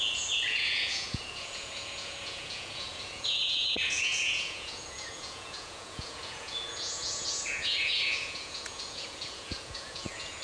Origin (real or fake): fake